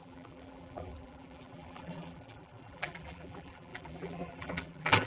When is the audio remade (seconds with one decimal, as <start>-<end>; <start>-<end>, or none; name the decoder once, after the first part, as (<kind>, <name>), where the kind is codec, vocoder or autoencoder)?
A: 0.0-5.1 (vocoder, BigVGAN v2)